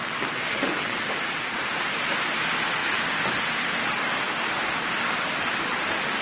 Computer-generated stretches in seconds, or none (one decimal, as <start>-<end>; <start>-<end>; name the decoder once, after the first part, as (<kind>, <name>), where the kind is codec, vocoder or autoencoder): 0.0-1.1 (vocoder, WaveNeXt)